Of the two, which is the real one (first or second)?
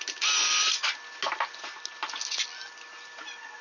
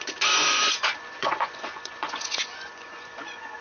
first